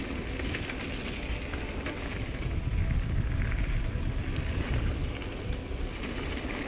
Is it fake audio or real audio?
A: real